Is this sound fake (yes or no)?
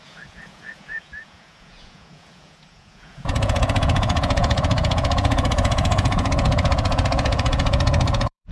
yes